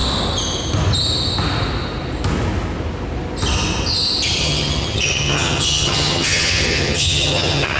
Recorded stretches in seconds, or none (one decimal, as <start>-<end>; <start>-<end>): 0.0-4.4